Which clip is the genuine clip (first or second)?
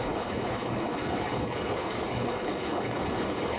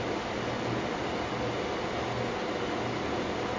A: second